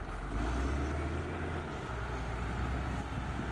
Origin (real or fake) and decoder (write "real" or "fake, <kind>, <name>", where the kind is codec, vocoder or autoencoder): real